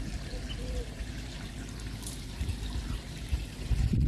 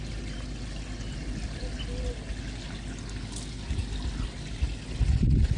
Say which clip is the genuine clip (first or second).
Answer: second